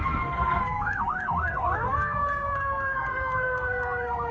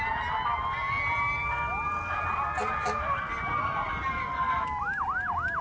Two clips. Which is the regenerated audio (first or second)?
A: first